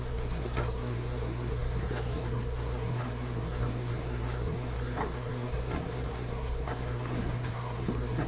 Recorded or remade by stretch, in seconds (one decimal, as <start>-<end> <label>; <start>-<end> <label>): 0.0-8.3 remade